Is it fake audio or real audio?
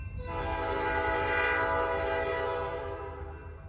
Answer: real